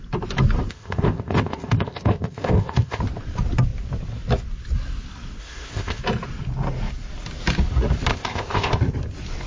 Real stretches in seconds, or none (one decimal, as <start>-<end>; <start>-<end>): 0.0-0.7; 3.0-5.4; 6.0-8.1; 8.8-9.5

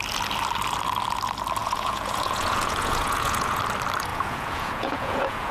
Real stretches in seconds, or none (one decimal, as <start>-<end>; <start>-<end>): 0.0-1.6; 3.6-4.1